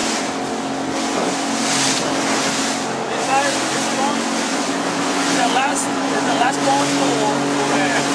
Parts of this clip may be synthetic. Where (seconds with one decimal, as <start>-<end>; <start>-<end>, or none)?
4.5-6.5